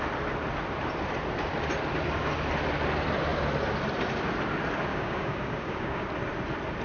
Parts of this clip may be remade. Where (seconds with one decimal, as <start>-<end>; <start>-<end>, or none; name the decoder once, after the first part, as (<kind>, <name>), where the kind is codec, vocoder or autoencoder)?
4.9-6.1 (codec, DAC)